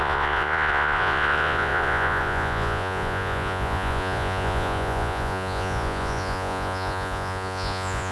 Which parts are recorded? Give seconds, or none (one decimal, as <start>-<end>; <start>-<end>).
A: none